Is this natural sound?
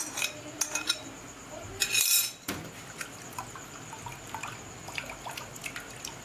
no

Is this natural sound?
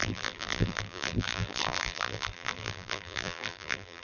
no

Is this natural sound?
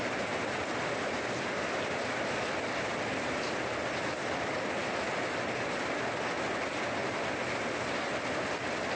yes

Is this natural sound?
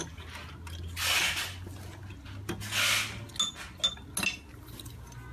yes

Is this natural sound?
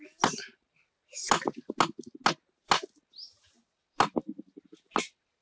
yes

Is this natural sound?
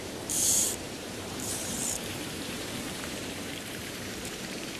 no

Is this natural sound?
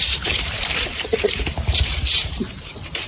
no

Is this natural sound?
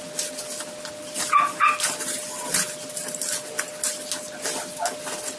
yes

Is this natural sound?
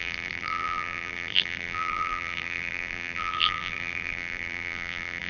no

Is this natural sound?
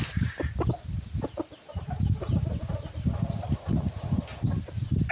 yes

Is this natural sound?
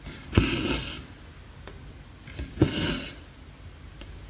yes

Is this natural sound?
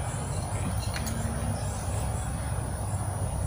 yes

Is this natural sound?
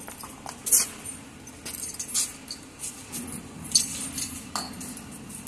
yes